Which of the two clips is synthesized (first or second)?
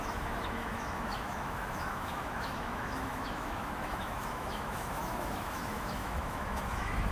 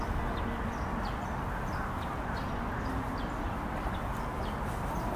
first